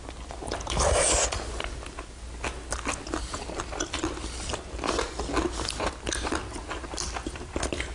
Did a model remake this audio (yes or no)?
no